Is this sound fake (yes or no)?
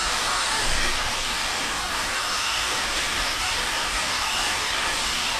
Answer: yes